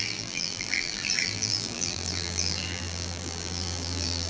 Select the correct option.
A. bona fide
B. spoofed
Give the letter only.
B